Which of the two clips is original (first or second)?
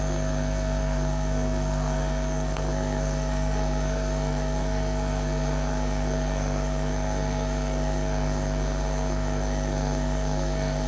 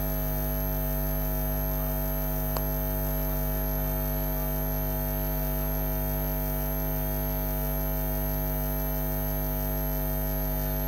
second